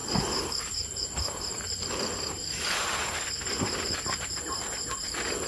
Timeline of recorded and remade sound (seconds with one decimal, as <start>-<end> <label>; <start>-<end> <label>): 0.0-3.3 remade; 3.3-5.5 recorded